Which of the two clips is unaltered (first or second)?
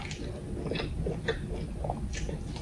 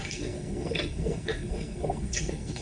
first